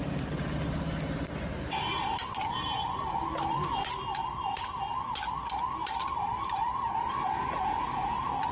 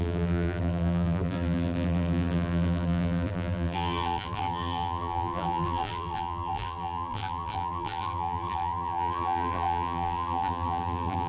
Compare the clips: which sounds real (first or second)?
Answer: first